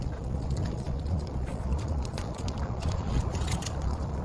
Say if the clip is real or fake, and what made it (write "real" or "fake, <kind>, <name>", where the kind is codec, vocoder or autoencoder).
fake, vocoder, Vocos